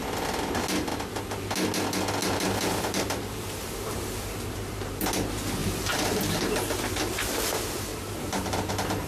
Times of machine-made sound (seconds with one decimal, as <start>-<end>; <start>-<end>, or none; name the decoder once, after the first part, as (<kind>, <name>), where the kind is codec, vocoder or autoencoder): 2.2-5.0 (vocoder, BigVGAN v2); 5.6-6.7; 7.9-8.7